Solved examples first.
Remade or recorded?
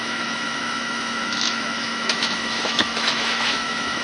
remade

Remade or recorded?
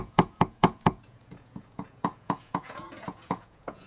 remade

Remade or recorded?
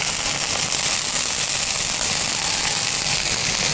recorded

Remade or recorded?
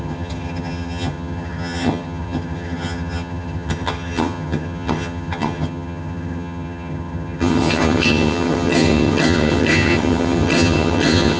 remade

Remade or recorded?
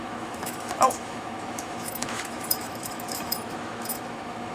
remade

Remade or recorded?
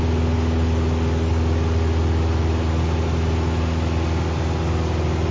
recorded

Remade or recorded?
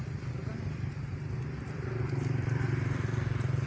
remade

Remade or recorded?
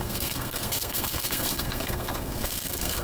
remade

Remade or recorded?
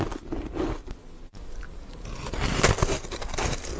recorded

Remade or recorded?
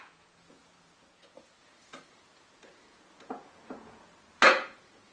remade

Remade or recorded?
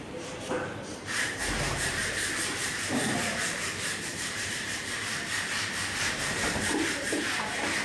remade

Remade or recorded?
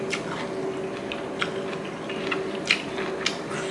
recorded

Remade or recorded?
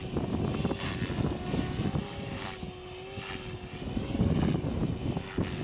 recorded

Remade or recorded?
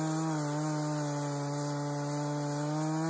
recorded